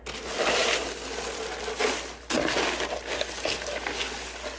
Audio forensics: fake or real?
real